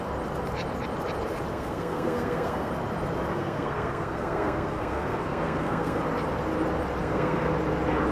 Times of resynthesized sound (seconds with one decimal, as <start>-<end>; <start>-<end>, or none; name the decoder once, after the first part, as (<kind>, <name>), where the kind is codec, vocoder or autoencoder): 1.5-2.7 (codec, SNAC); 3.3-6.0; 7.0-7.5